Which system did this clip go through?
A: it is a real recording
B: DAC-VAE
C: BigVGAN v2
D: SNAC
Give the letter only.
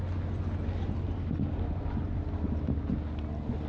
A